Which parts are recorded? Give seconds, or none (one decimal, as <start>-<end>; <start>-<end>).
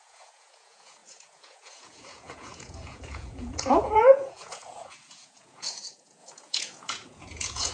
none